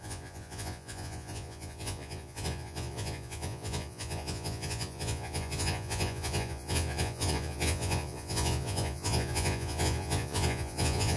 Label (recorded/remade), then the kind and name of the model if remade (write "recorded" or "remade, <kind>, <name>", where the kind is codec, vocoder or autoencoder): remade, vocoder, Vocos